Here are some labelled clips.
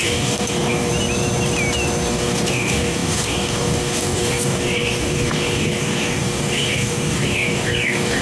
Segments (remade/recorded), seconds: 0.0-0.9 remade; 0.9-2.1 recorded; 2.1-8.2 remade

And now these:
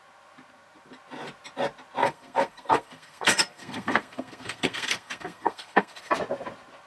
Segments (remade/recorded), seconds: 0.0-2.0 recorded; 2.0-6.1 remade; 6.1-6.9 recorded